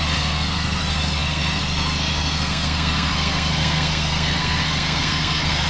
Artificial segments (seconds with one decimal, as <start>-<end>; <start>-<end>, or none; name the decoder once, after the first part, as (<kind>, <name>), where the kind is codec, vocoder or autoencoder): 0.0-5.7 (codec, SNAC)